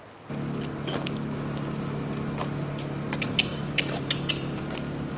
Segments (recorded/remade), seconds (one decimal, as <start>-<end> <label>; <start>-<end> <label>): 0.0-3.5 recorded; 3.5-4.6 remade; 4.6-5.2 recorded